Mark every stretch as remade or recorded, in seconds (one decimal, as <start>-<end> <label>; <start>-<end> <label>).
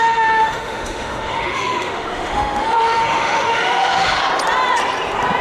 0.0-4.2 remade; 4.2-5.4 recorded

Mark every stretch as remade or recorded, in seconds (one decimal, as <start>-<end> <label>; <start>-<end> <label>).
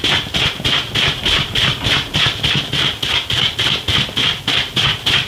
0.0-5.3 recorded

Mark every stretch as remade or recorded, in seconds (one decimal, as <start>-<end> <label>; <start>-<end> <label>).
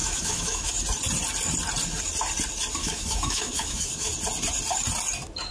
0.0-0.7 remade; 0.7-2.8 recorded; 2.8-4.1 remade; 4.1-5.5 recorded